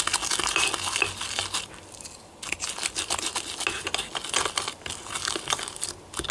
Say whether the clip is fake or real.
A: real